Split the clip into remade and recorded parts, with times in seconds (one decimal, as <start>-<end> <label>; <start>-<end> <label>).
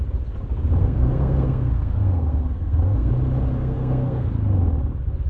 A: 0.0-0.8 recorded; 0.8-3.1 remade; 3.1-3.6 recorded; 3.6-4.3 remade; 4.3-5.3 recorded